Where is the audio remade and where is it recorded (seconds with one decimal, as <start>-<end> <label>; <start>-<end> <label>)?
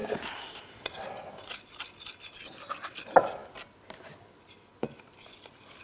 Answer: 0.0-0.6 remade; 0.6-5.8 recorded